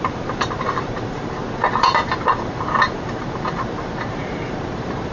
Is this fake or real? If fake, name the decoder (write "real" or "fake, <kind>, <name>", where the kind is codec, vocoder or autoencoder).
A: fake, vocoder, BigVGAN v2